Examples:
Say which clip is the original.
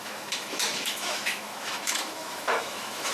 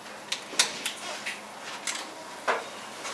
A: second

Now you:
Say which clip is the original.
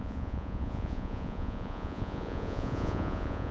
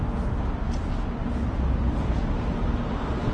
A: second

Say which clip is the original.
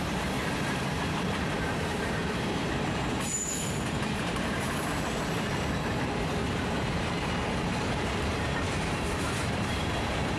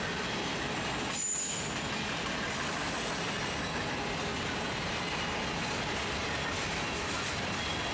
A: second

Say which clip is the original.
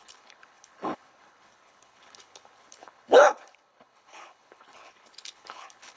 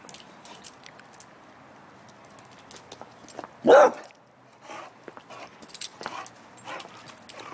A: second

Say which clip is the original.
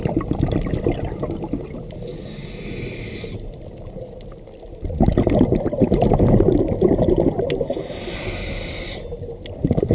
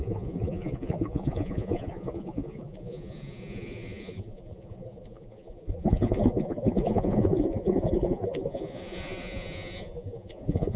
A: first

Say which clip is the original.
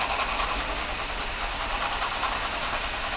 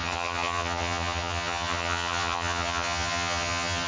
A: first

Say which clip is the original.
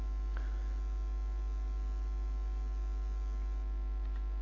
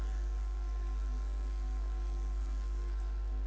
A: first